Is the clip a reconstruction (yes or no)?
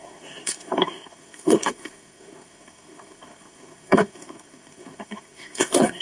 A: yes